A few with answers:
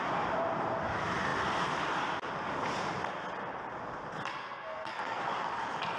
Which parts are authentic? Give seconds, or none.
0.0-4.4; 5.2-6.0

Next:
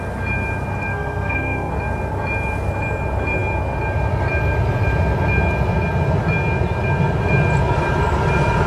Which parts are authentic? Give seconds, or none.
0.0-0.9; 1.7-8.7

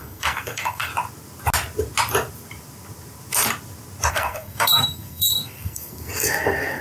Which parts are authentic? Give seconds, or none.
0.9-4.1

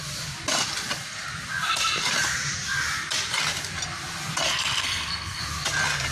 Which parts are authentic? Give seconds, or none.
0.0-4.5; 5.4-6.1

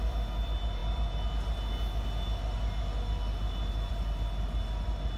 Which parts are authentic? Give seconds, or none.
0.0-5.2

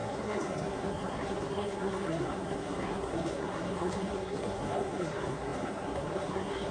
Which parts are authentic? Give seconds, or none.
none

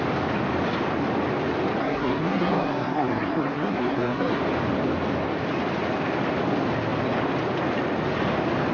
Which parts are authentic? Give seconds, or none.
0.0-1.8; 4.4-8.7

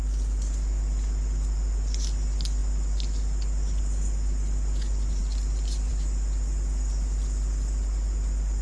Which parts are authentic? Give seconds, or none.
0.0-8.6